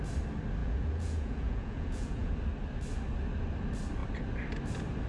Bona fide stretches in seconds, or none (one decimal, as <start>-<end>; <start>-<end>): 0.0-0.6; 2.3-5.1